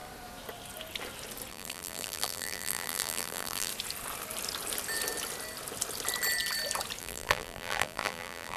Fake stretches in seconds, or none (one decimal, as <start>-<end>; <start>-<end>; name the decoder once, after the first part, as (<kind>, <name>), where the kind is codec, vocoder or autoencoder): 1.5-3.7 (vocoder, BigVGAN v2); 7.0-8.6